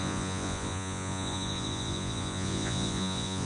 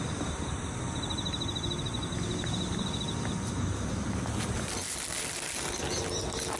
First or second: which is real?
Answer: second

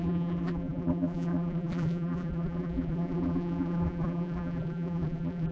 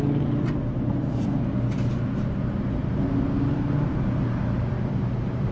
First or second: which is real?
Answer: second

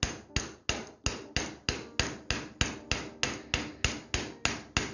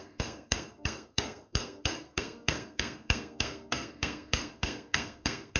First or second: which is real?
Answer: first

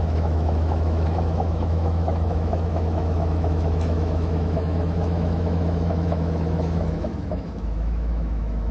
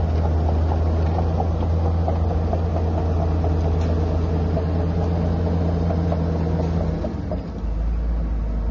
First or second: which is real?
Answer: second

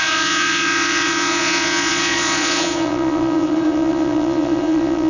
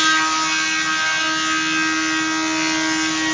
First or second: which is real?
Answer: second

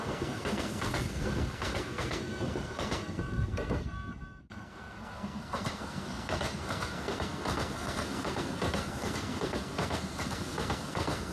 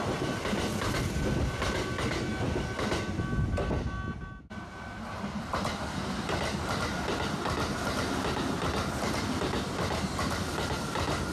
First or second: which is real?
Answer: second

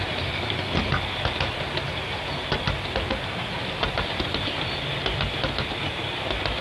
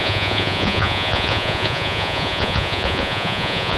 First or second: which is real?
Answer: first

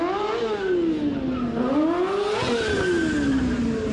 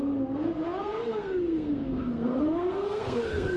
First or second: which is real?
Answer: first